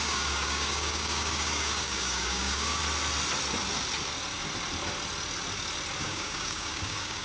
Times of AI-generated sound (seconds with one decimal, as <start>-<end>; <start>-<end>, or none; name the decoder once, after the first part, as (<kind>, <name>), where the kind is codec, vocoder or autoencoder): 0.0-2.8 (codec, DAC); 6.0-7.2